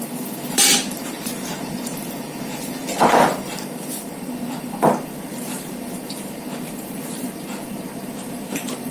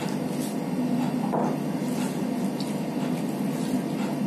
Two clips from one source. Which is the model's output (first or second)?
first